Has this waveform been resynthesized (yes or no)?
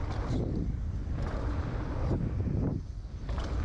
no